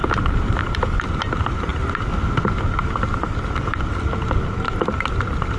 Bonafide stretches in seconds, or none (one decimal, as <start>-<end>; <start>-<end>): 1.7-5.1